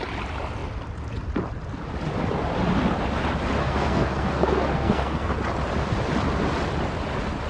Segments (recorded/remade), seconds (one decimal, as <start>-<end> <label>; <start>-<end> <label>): 0.0-3.6 recorded; 3.6-5.3 remade; 5.3-7.5 recorded